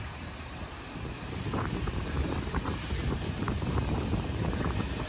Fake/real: fake